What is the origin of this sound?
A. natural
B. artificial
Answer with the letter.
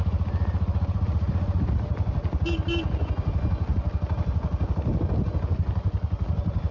A